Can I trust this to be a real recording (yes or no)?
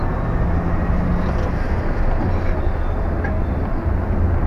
yes